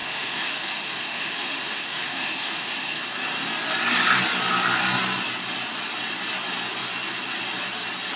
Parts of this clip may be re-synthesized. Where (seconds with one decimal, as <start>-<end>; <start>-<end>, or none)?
0.0-3.0